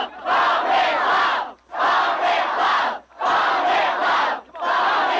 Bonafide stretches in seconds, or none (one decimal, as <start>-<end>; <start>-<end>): 0.0-5.2